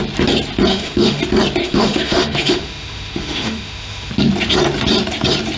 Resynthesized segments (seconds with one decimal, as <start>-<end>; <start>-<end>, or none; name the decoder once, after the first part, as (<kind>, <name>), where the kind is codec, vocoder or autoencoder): 0.7-1.2 (autoencoder, DAC-VAE); 1.6-4.1